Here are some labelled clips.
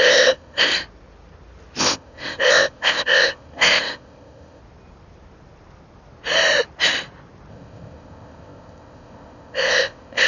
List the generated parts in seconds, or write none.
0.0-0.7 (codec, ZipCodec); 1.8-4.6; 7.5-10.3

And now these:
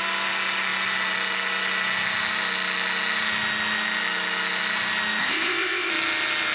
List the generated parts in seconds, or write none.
5.2-5.9 (codec, ZipCodec)

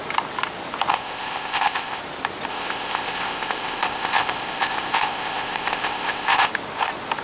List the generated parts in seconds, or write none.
0.9-2.0 (codec, ZipCodec); 2.5-6.5

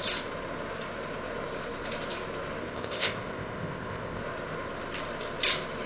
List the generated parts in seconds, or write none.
2.6-4.2 (codec, ZipCodec)

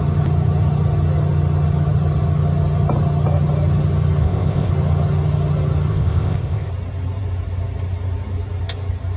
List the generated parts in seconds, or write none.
4.2-4.7 (codec, ZipCodec); 5.9-6.7

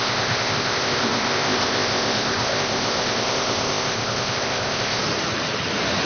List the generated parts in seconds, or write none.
0.0-5.0 (codec, ZipCodec)